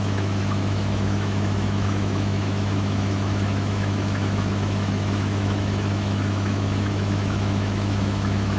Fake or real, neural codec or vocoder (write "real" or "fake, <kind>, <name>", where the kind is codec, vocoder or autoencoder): fake, autoencoder, DAC-VAE